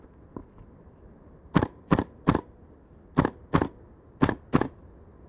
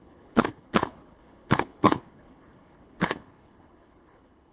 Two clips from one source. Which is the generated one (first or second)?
second